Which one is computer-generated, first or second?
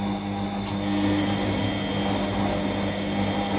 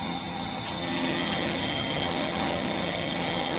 second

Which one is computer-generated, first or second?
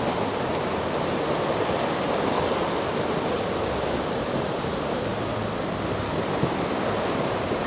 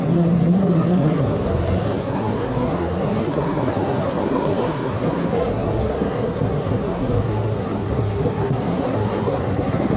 second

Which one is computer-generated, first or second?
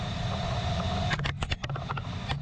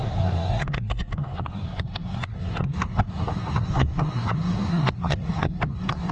second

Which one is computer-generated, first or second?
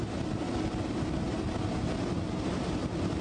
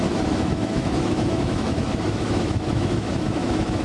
second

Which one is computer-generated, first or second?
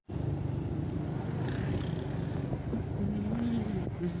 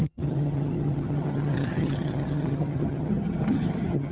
second